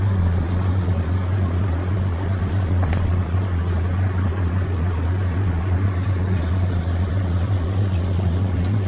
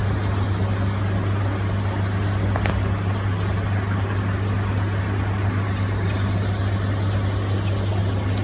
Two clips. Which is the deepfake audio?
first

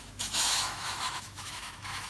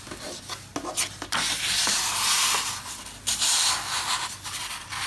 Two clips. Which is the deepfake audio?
first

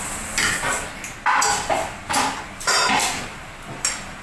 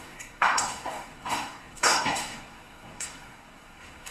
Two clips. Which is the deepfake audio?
second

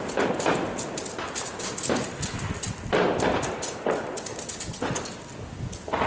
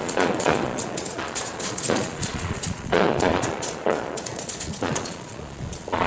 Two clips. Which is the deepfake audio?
second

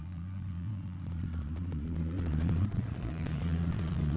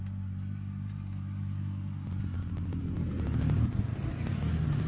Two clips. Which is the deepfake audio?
first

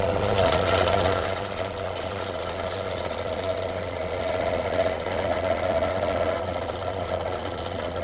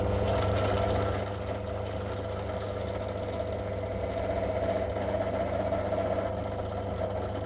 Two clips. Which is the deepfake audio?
first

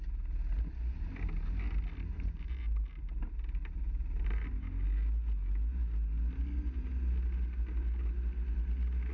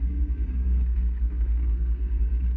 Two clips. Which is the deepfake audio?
second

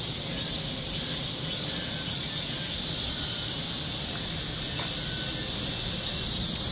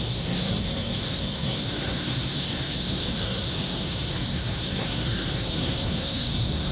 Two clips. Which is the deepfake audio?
second